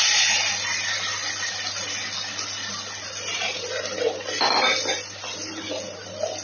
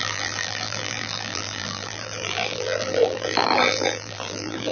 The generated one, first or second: second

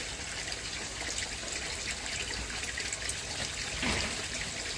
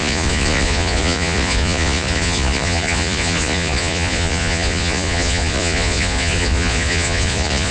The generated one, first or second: second